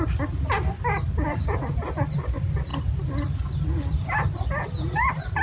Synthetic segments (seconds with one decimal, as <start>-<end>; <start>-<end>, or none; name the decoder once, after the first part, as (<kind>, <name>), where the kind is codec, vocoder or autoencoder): none